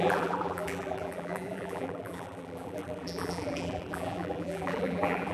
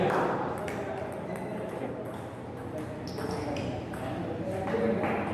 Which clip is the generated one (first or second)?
first